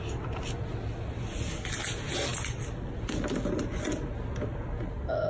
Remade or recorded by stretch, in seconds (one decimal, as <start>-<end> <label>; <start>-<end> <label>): 0.0-5.3 recorded